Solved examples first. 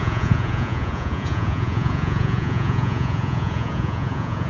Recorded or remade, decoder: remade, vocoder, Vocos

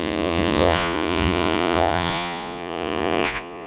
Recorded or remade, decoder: remade, vocoder, Vocos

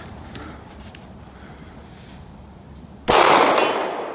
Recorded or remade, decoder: recorded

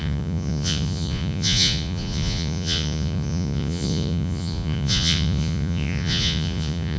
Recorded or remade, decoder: remade, vocoder, Vocos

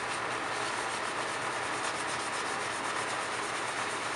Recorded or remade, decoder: recorded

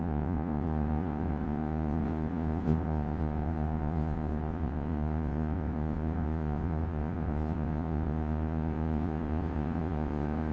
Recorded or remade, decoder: remade, vocoder, Vocos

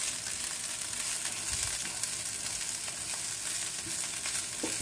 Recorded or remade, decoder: recorded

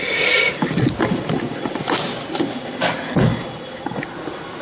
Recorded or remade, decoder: recorded